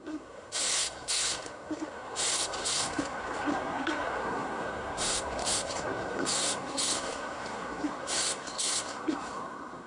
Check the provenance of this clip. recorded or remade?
remade